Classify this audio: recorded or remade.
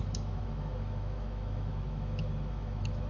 remade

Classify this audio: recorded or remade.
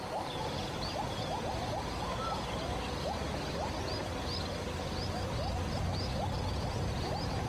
recorded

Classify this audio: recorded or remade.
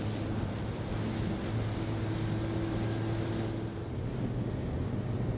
recorded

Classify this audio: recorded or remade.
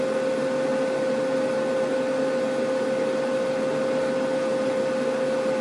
recorded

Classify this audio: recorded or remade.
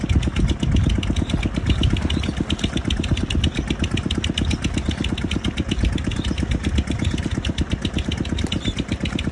recorded